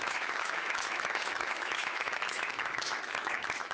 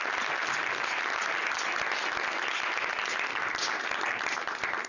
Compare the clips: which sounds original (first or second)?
second